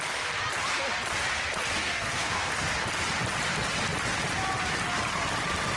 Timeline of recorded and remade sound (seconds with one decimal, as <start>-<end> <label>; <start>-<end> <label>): 0.0-1.8 recorded; 1.8-2.5 remade; 2.5-5.8 recorded